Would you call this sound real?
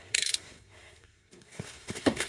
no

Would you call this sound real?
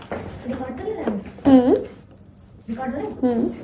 yes